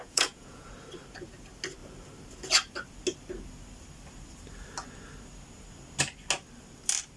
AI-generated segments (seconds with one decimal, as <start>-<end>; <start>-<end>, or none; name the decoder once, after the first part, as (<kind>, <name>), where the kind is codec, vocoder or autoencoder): 0.0-0.7 (vocoder, Vocos)